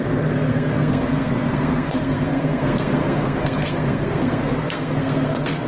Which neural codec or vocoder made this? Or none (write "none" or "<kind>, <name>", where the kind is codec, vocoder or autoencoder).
codec, SNAC